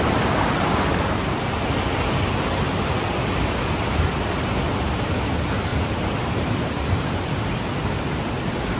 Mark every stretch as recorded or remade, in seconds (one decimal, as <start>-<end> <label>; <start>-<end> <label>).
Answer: 0.0-8.8 recorded